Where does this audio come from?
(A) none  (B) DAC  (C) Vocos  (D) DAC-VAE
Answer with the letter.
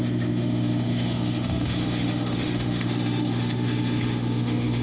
D